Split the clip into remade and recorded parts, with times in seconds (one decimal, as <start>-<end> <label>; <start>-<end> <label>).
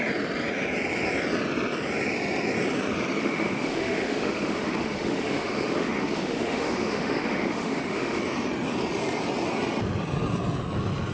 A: 0.0-3.2 recorded; 3.2-8.2 remade; 8.2-11.1 recorded